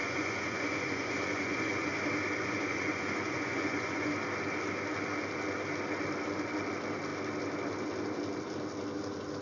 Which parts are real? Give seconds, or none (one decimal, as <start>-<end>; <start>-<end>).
1.9-2.4; 4.1-9.4